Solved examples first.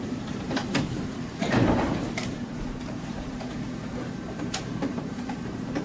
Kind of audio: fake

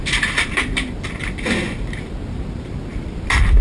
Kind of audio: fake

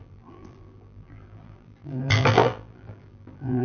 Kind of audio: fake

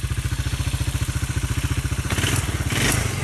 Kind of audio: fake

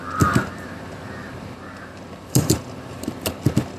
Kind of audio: real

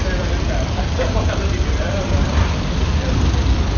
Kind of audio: fake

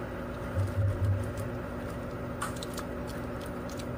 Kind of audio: real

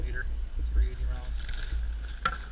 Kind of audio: real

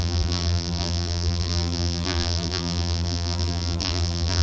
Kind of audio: fake